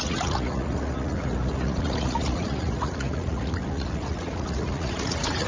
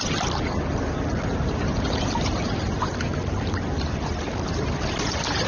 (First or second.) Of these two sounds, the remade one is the first